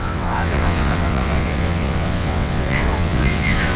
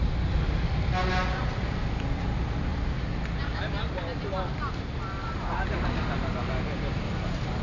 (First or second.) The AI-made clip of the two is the first